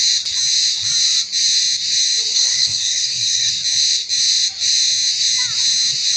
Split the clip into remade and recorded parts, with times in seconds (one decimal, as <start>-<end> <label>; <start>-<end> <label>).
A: 0.0-2.3 recorded; 2.3-3.5 remade; 3.5-6.2 recorded